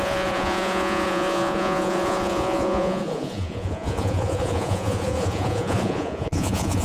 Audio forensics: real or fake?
fake